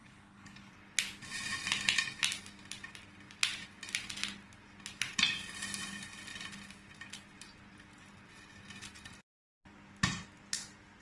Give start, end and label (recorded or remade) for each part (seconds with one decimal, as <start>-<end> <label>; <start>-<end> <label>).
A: 0.0-0.7 remade; 0.7-11.0 recorded